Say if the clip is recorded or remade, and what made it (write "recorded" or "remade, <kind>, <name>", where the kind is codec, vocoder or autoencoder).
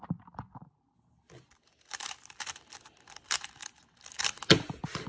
recorded